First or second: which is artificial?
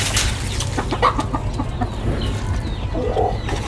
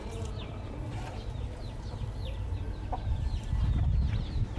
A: second